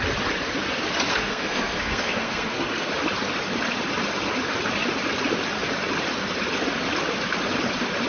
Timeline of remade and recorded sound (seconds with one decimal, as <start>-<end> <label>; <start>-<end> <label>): 0.0-1.1 recorded; 1.1-2.9 remade; 2.9-8.1 recorded